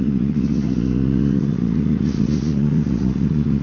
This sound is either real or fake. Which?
fake